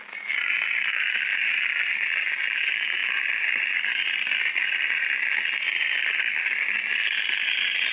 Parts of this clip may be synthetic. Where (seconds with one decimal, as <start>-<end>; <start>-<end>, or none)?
none